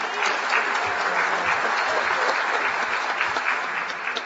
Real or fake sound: real